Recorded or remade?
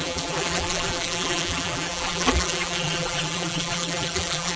remade